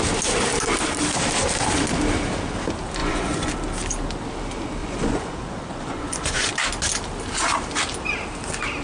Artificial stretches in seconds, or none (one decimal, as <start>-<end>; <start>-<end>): 3.0-3.5; 4.8-6.5

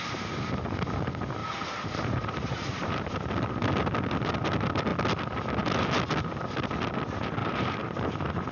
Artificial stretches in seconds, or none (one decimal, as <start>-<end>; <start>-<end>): 1.4-3.2; 7.4-8.1

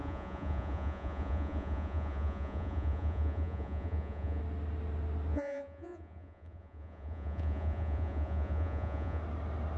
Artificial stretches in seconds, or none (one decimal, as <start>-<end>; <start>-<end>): 0.0-4.4; 5.3-9.2

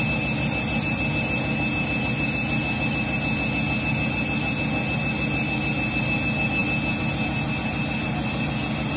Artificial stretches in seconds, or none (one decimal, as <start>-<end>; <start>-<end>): none

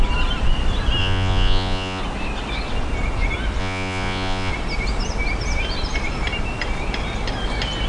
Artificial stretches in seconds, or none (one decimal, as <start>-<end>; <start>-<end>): 1.0-2.0; 3.6-4.5

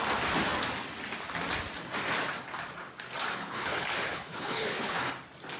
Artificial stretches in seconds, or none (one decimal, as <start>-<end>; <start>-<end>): 3.3-5.1